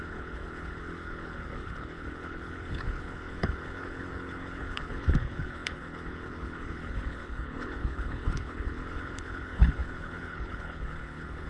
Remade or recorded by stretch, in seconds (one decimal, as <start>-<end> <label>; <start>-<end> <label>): 0.0-11.5 remade